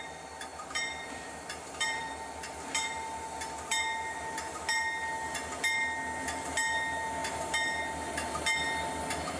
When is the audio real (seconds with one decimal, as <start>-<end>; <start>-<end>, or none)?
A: 0.0-0.5; 2.1-9.4